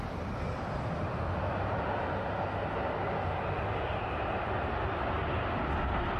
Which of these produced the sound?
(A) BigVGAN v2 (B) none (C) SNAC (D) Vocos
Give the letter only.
B